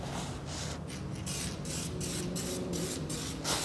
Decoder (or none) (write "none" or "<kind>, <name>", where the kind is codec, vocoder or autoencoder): none